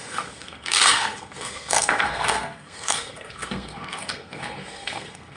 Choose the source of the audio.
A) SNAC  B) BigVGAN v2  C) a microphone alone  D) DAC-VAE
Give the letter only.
A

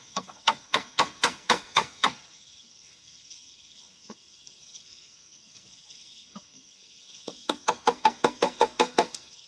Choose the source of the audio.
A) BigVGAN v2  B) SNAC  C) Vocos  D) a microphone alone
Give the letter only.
B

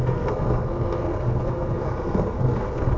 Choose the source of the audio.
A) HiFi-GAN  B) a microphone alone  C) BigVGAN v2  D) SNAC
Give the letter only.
D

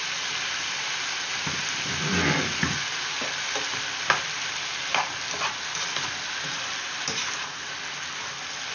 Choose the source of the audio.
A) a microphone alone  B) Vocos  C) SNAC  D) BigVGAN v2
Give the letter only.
A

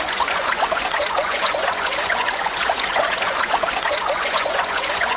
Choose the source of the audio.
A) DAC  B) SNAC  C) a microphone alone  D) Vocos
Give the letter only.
D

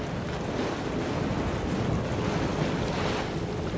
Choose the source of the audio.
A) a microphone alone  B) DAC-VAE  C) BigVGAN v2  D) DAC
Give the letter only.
A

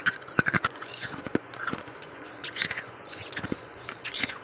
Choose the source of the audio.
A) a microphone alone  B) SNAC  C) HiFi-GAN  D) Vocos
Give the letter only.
D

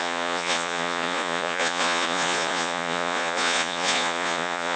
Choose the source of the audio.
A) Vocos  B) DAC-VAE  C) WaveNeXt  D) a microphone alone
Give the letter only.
A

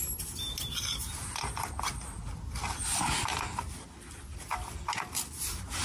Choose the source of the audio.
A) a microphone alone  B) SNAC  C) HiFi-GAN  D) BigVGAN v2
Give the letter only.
A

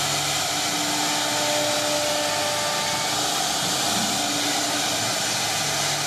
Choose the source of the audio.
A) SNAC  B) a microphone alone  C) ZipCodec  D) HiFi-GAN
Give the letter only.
B